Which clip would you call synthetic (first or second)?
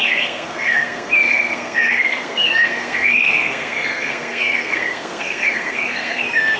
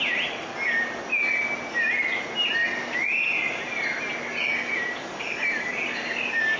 first